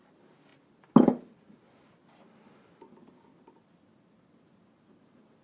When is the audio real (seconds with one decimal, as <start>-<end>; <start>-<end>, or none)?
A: 0.0-5.4